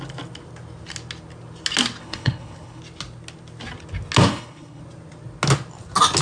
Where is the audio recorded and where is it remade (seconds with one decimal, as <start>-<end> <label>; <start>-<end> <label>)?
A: 0.0-2.0 recorded; 2.0-2.8 remade; 2.8-4.3 recorded; 4.3-4.8 remade; 4.8-6.2 recorded